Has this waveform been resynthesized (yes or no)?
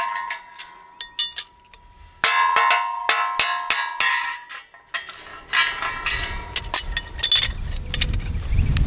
no